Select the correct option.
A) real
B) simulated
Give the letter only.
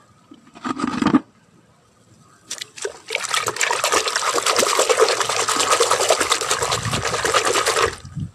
A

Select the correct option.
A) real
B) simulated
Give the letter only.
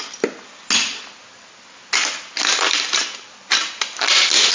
A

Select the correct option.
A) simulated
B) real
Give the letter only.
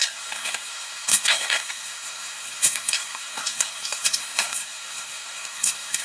A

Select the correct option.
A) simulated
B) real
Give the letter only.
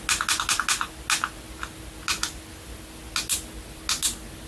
B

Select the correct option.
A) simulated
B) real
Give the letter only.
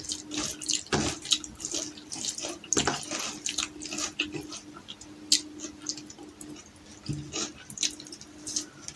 B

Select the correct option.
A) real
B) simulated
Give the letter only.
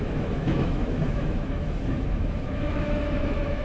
B